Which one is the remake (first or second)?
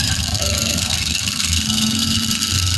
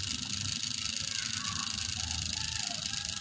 first